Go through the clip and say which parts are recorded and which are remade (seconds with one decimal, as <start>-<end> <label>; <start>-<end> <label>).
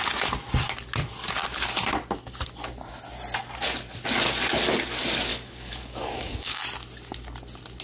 0.0-5.3 recorded; 5.3-6.6 remade; 6.6-7.8 recorded